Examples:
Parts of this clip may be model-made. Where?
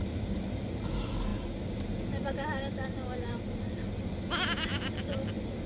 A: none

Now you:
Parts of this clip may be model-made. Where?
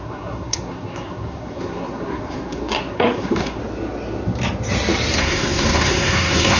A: 0.0-3.6 (codec, SNAC); 5.2-6.6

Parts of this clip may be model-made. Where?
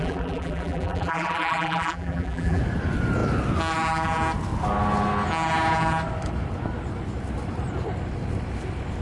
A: 0.0-2.6 (vocoder, BigVGAN v2)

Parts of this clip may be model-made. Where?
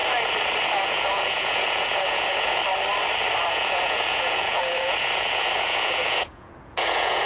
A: 0.6-2.6 (vocoder, Vocos); 3.5-7.3